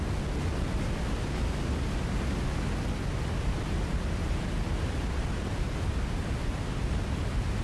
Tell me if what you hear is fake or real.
real